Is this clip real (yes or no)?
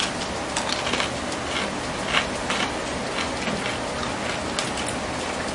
yes